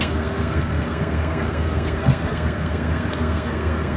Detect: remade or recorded remade